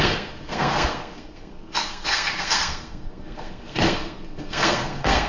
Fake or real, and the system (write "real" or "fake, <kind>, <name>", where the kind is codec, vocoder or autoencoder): fake, codec, SNAC